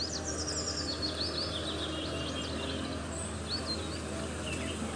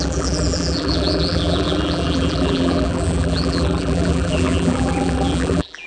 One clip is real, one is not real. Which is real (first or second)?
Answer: first